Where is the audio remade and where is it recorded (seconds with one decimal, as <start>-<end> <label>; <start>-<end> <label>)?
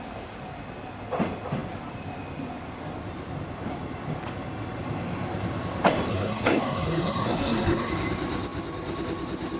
0.0-6.1 recorded; 6.1-7.9 remade; 7.9-9.6 recorded